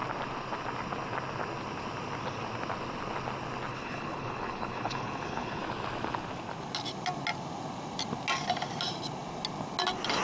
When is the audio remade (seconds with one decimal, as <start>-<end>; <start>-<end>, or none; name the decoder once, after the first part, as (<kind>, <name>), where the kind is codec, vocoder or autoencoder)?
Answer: 3.7-5.6 (codec, HILCodec)